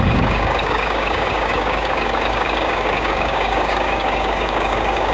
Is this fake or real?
fake